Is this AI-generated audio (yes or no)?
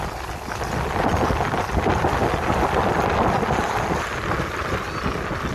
no